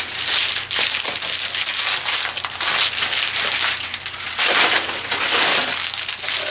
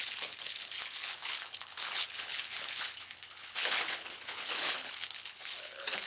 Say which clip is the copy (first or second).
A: second